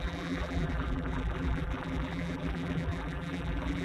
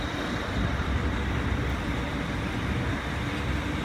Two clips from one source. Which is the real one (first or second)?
second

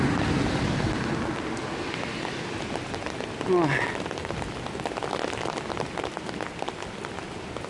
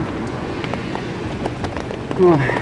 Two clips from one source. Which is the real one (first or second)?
first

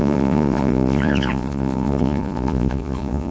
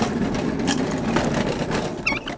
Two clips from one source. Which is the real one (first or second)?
second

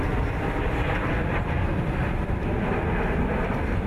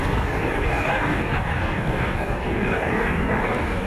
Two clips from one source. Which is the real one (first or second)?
first